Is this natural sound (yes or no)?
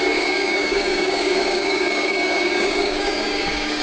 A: no